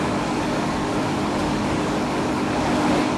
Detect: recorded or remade remade